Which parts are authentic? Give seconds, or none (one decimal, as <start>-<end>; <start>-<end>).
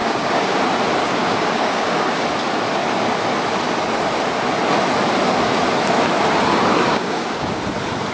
0.6-1.0; 2.2-6.9; 7.6-8.1